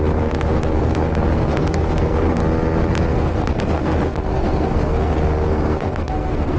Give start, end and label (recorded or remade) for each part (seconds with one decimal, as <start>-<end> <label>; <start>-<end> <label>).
0.0-2.4 remade; 2.4-3.1 recorded; 3.1-6.6 remade